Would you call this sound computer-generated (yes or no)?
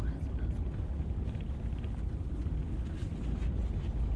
no